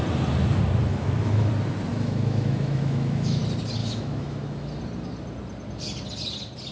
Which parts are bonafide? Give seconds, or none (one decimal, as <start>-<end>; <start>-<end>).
0.0-0.9; 1.5-1.9; 3.4-3.8; 4.7-6.7